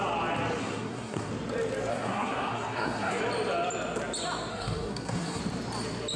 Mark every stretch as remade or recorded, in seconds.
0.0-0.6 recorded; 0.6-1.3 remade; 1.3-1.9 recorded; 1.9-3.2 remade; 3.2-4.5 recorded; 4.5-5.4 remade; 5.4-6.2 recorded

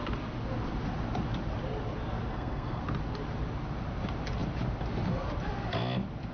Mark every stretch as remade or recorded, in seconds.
0.0-2.3 recorded; 2.3-2.8 remade; 2.8-6.3 recorded

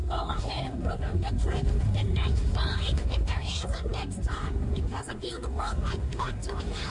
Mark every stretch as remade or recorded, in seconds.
0.0-6.9 remade

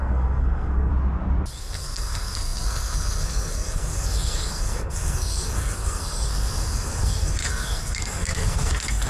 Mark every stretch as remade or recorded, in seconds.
0.0-0.9 remade; 0.9-1.5 recorded; 1.5-9.1 remade

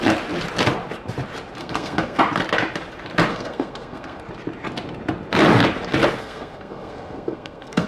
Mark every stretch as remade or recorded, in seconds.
0.0-1.6 recorded; 1.6-2.2 remade; 2.2-3.3 recorded; 3.3-4.2 remade; 4.2-6.2 recorded; 6.2-7.9 remade